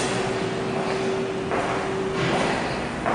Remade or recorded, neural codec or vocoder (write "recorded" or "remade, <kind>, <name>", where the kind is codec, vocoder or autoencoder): recorded